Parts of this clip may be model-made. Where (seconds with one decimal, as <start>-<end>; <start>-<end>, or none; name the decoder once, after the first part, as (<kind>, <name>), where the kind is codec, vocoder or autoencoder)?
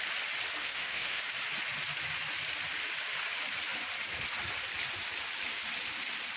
0.6-1.2 (autoencoder, DAC-VAE)